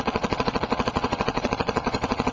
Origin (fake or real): fake